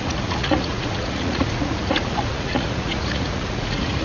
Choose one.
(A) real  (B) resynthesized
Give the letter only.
B